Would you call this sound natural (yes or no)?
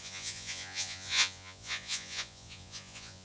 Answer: no